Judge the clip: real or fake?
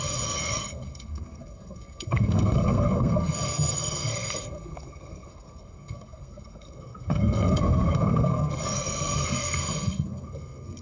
fake